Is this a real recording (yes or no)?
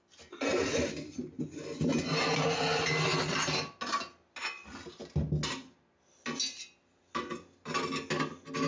yes